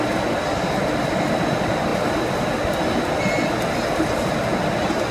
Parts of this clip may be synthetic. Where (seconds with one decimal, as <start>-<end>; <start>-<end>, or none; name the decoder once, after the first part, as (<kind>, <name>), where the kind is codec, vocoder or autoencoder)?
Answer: none